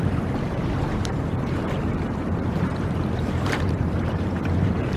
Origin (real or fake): fake